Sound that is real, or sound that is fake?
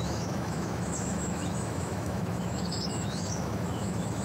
fake